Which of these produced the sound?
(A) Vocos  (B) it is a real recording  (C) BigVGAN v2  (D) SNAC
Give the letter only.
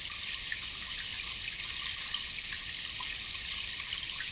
B